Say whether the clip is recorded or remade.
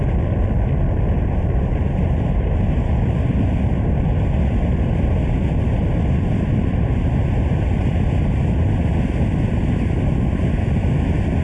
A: recorded